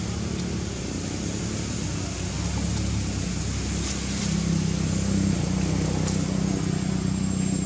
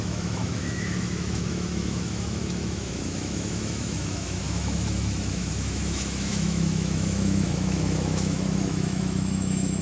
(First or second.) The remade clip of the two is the second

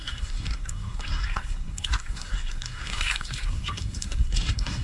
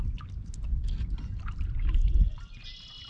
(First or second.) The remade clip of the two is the first